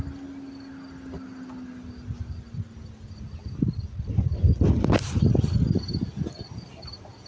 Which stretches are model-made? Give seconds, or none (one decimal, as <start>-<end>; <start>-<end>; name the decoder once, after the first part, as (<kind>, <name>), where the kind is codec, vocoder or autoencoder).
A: none